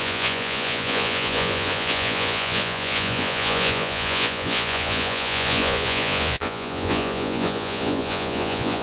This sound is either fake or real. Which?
fake